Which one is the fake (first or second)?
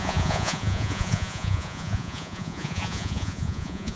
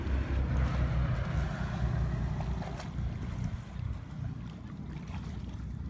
first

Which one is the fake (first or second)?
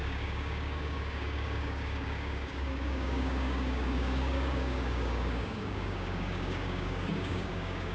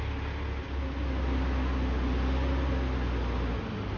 first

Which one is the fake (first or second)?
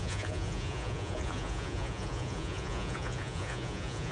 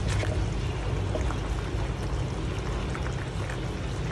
first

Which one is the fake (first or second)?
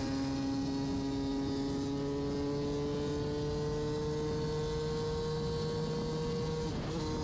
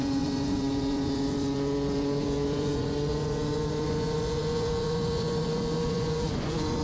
second